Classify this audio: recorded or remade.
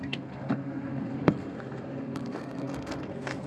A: remade